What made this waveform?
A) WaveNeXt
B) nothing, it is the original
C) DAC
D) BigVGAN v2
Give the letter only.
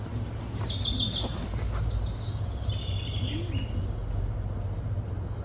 B